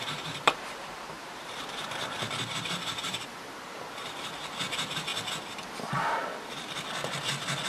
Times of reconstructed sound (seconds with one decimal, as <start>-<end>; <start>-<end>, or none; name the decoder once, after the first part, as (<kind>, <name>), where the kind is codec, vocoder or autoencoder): 0.0-5.1 (vocoder, BigVGAN v2)